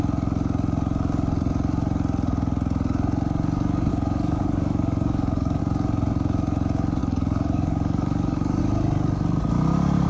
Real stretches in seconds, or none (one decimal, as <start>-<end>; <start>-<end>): 0.0-3.9; 5.6-7.0; 8.6-10.1